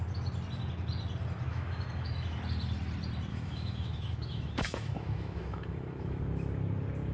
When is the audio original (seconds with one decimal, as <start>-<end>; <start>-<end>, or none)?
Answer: 0.0-1.5; 2.4-3.3; 6.2-7.1